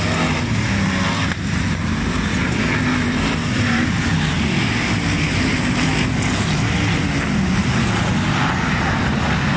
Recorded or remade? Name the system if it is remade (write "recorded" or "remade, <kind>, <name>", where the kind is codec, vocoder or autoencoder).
recorded